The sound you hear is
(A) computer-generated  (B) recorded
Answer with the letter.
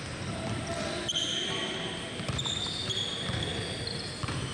B